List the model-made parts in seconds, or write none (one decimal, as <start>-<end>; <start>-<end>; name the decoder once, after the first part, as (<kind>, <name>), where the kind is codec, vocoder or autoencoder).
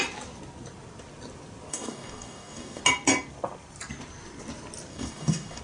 1.7-2.8 (codec, DAC); 4.9-5.6